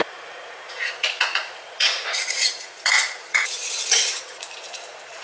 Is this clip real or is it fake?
fake